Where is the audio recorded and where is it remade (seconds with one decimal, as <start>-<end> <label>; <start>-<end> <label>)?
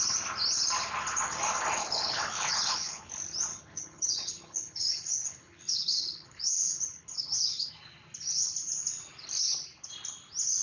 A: 0.0-1.8 recorded; 1.8-3.1 remade; 3.1-3.5 recorded; 3.5-7.7 remade; 7.7-10.6 recorded